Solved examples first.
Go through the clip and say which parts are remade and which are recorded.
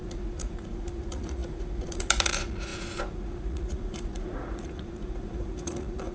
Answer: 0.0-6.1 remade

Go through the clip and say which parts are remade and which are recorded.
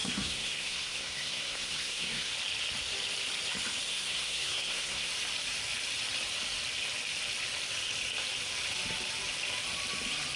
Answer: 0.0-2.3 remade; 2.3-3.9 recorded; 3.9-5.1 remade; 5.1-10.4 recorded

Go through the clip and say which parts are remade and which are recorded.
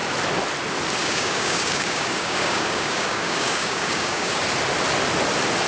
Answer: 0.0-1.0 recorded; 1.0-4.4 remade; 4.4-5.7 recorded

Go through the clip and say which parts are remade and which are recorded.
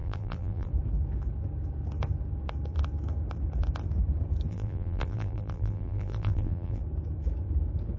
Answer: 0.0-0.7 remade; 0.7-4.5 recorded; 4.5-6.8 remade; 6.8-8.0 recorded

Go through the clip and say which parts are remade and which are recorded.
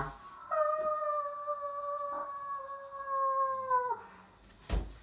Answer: 0.0-5.0 recorded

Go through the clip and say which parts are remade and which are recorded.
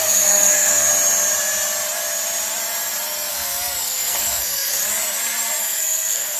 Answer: 0.0-0.9 remade; 0.9-3.3 recorded; 3.3-4.8 remade; 4.8-5.6 recorded; 5.6-6.4 remade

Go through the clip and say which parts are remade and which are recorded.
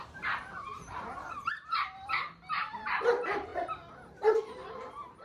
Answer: 0.0-3.5 remade; 3.5-4.2 recorded; 4.2-5.2 remade